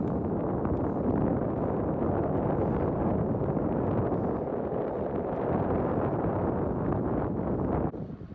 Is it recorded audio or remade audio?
recorded